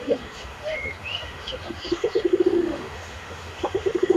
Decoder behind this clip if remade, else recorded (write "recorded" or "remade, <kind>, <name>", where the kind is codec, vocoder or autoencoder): remade, autoencoder, DAC-VAE